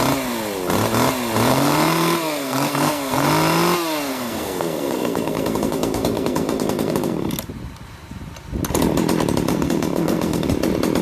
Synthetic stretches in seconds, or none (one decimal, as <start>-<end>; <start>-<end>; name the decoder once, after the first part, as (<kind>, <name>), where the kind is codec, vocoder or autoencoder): 1.5-3.3 (codec, SNAC); 4.1-7.3; 9.5-10.5